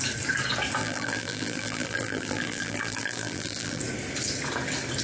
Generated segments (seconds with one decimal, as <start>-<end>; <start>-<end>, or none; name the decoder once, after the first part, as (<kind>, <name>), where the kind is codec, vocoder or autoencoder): 0.8-3.8 (vocoder, BigVGAN v2)